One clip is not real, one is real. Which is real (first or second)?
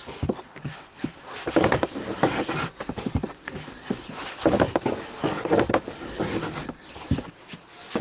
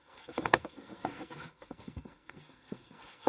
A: first